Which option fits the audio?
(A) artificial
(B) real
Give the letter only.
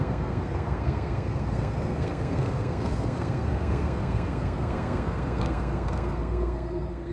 A